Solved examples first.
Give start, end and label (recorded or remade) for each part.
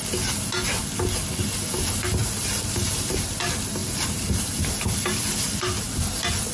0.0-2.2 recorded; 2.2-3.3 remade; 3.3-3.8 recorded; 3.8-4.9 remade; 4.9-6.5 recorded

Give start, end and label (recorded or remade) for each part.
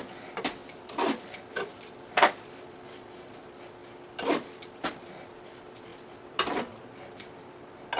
0.0-8.0 recorded